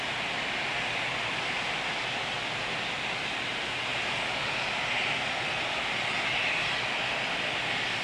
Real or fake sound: real